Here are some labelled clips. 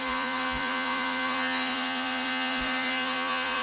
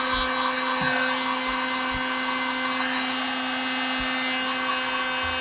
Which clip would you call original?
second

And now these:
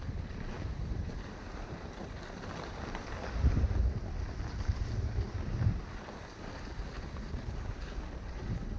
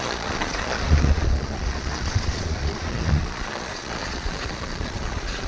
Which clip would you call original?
first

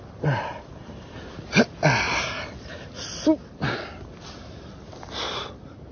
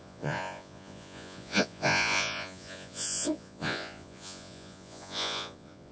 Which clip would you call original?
first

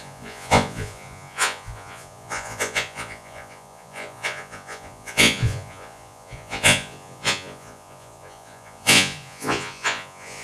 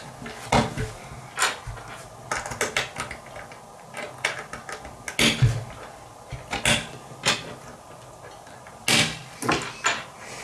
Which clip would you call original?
second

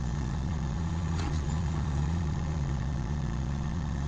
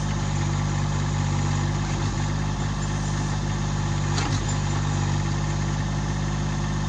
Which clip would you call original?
second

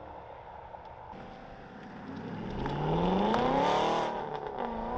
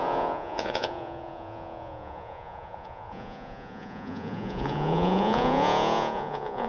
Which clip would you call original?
first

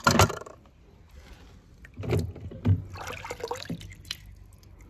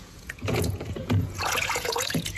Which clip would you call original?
first